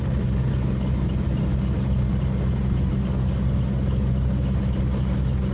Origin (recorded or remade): recorded